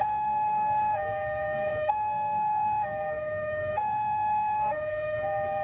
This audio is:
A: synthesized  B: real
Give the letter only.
A